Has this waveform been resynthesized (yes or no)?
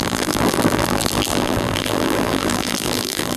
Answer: yes